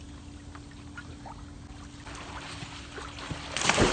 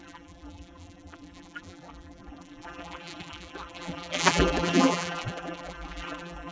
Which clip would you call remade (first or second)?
second